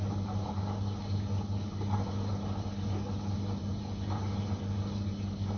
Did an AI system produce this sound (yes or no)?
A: no